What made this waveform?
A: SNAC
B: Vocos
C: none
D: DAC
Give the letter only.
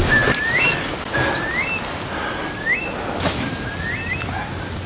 C